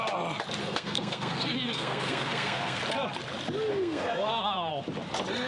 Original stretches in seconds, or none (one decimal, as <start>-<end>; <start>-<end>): 0.0-0.6; 2.8-3.7; 4.7-5.5